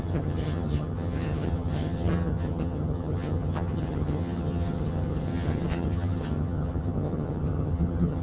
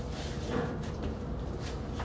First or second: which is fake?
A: first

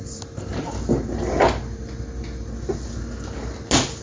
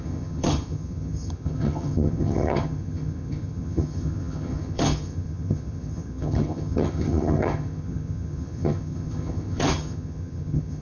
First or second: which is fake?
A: second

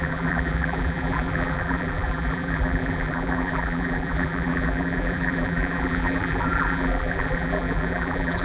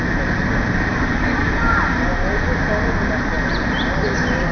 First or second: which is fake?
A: first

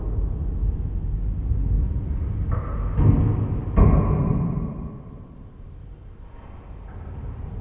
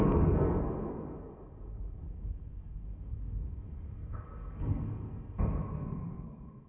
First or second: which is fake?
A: second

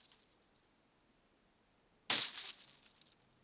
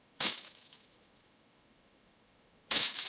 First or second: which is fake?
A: second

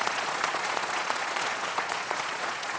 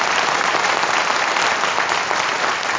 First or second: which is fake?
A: first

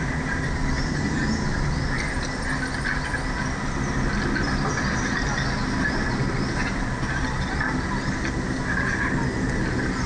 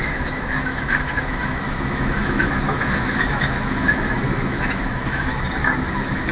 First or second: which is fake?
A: second